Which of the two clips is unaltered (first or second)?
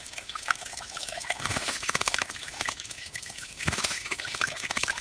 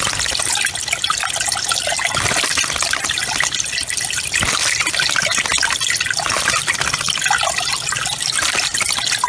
second